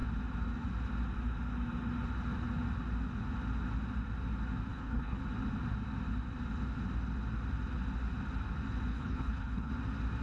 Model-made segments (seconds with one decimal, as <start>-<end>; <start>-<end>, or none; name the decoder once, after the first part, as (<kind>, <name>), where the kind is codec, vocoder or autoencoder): 4.7-5.2 (codec, HILCodec); 8.9-9.7